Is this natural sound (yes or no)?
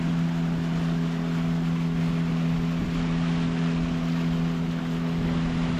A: yes